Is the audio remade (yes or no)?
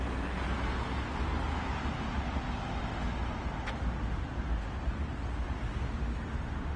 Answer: no